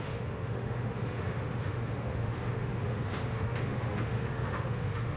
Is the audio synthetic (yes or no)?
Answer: yes